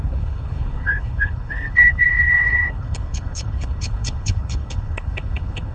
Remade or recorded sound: remade